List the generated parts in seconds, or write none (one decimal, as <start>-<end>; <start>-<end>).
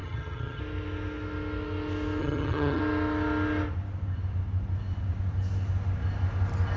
0.0-0.6; 2.2-2.8